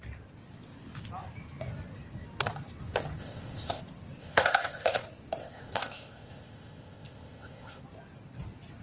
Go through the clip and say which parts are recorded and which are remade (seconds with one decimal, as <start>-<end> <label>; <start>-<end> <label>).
0.0-3.2 recorded; 3.2-3.8 remade; 3.8-4.2 recorded; 4.2-5.0 remade; 5.0-5.4 recorded; 5.4-7.8 remade; 7.8-8.8 recorded